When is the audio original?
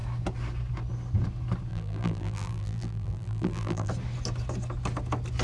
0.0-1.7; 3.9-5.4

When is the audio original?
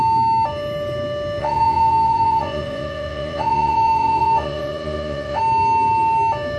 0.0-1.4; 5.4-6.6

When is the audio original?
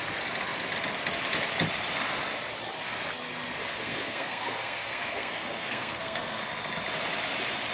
0.0-3.6; 6.4-7.7